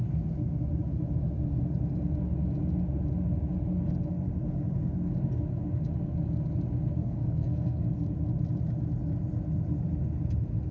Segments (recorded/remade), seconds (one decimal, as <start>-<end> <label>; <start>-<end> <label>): 0.0-7.0 recorded; 7.0-7.8 remade; 7.8-10.7 recorded